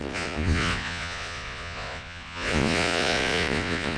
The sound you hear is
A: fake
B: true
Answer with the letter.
A